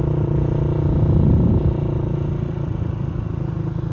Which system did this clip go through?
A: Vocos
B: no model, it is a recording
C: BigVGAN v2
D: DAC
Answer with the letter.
B